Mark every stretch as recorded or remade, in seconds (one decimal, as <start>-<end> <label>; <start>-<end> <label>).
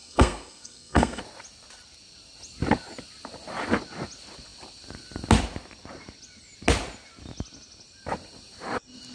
0.0-1.2 remade; 1.2-9.1 recorded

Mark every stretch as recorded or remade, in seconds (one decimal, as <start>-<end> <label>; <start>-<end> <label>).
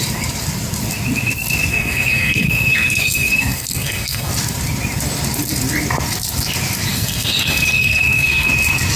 0.0-1.7 recorded; 1.7-4.3 remade; 4.3-6.9 recorded; 6.9-8.5 remade; 8.5-9.0 recorded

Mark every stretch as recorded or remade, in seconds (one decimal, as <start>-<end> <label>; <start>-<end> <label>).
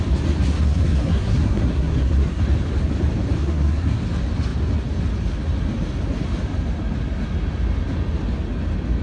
0.0-0.5 recorded; 0.5-2.4 remade; 2.4-3.4 recorded; 3.4-4.0 remade; 4.0-9.0 recorded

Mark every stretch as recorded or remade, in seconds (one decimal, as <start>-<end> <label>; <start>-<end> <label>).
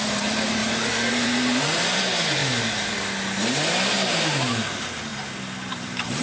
0.0-0.6 remade; 0.6-1.1 recorded; 1.1-2.4 remade; 2.4-3.9 recorded; 3.9-5.1 remade; 5.1-5.7 recorded; 5.7-6.2 remade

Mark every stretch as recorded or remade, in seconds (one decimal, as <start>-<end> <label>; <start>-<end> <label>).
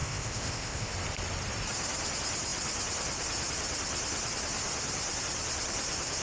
0.0-0.9 remade; 0.9-6.2 recorded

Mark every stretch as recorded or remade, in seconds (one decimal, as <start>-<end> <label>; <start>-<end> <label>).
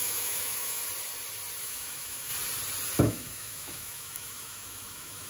0.0-0.8 remade; 0.8-1.6 recorded; 1.6-2.3 remade; 2.3-3.0 recorded; 3.0-5.3 remade